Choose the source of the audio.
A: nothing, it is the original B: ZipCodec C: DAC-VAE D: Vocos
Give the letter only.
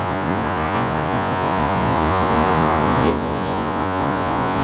D